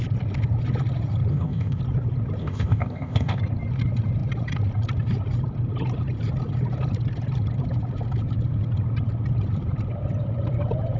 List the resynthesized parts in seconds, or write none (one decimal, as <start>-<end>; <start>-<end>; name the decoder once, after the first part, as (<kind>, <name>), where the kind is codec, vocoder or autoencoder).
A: 1.3-1.8 (codec, ZipCodec); 2.4-3.4